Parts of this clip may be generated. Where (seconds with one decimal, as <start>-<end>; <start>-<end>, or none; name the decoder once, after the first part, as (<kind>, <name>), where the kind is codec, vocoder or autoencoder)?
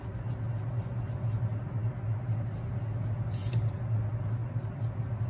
4.4-5.3 (vocoder, BigVGAN v2)